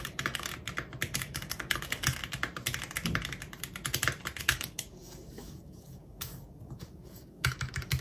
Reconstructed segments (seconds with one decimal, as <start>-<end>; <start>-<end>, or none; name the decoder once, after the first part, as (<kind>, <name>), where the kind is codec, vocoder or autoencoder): 0.0-0.5 (codec, DAC); 1.2-2.2; 4.4-8.0